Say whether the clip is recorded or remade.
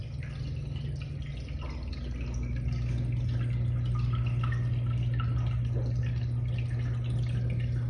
recorded